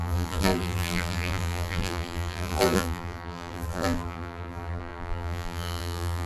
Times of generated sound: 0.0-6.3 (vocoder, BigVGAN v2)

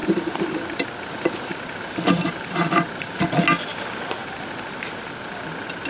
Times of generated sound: 0.0-3.3 (vocoder, BigVGAN v2); 4.2-4.8

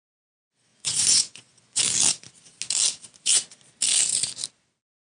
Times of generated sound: 0.7-1.8 (vocoder, Vocos)